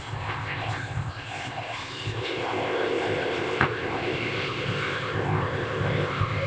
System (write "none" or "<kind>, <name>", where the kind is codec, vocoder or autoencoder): codec, ZipCodec